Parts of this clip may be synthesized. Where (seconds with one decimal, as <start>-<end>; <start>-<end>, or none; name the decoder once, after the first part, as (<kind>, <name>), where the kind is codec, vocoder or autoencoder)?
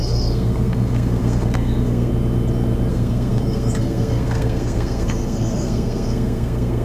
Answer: 0.0-2.1 (codec, SNAC); 2.9-6.8